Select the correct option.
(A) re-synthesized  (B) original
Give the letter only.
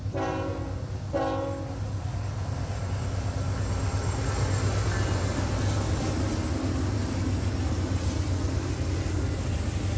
B